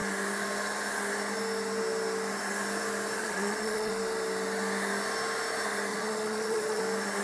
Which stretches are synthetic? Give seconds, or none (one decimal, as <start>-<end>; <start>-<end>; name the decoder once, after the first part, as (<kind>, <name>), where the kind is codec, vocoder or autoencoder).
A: 3.2-3.9 (vocoder, Vocos); 5.9-6.8